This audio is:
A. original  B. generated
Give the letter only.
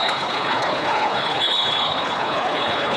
B